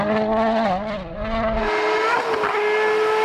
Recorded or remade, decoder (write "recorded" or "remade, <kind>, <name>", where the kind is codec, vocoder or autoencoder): recorded